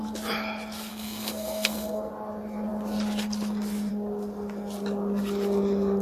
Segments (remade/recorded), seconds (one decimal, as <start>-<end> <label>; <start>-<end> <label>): 0.0-0.9 recorded; 0.9-2.1 remade; 2.1-6.0 recorded